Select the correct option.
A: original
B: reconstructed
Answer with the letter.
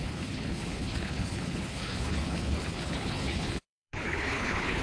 B